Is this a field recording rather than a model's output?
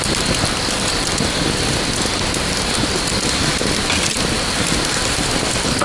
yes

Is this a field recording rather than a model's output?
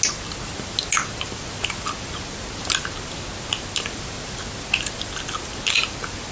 yes